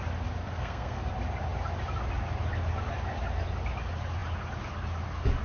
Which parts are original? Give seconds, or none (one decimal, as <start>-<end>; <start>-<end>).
0.0-0.4; 1.1-5.4